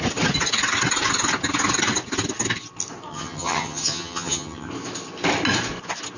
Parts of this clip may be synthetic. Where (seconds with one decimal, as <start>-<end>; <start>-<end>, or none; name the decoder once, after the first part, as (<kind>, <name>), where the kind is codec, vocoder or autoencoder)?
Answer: 3.1-4.7 (vocoder, HiFi-GAN)